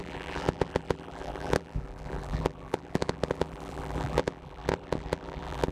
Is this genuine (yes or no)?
no